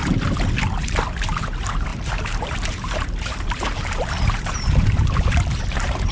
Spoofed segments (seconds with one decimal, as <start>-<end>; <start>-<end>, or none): 1.4-6.1